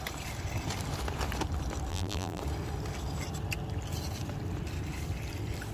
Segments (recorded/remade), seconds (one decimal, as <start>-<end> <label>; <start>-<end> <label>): 0.0-1.9 recorded; 1.9-2.4 remade; 2.4-5.7 recorded